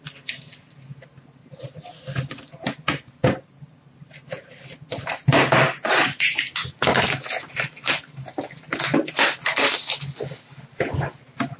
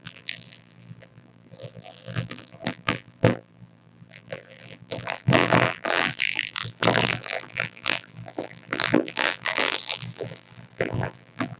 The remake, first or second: second